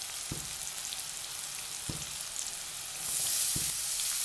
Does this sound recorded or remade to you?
recorded